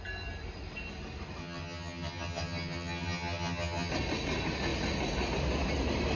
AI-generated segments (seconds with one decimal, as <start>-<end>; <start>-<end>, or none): 1.4-3.9